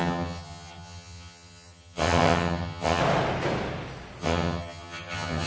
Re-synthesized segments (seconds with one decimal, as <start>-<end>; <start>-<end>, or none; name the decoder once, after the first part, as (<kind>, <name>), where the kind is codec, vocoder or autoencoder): 0.0-3.0 (vocoder, HiFi-GAN); 4.2-5.5